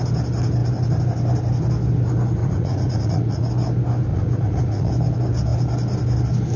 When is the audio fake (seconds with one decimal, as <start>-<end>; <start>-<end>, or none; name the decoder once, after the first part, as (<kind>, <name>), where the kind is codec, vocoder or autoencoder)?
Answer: 2.4-3.5 (vocoder, Vocos); 4.1-4.9